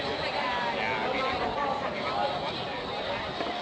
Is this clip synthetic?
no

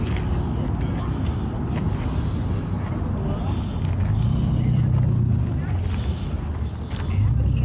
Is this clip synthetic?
no